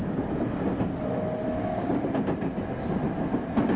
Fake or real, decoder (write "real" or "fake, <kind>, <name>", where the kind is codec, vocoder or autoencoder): real